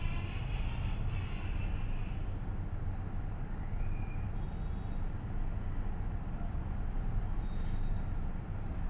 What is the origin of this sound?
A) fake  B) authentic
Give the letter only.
B